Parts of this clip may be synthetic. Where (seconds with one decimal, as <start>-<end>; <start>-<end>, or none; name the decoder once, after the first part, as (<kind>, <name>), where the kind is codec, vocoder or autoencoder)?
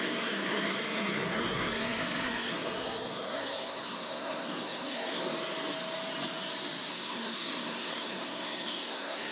0.0-5.2 (codec, SNAC); 6.9-9.3